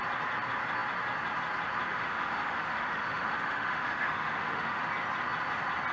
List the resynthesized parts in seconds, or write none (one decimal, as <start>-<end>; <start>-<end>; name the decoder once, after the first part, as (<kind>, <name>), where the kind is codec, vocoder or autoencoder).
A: 1.9-4.8 (autoencoder, DAC-VAE)